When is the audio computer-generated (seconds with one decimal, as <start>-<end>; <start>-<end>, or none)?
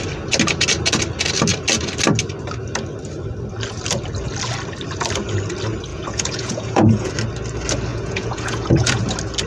5.9-7.1; 7.9-9.0